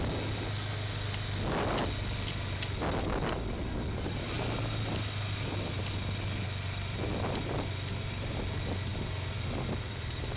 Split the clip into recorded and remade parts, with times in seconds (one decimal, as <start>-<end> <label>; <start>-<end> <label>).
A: 0.0-10.4 recorded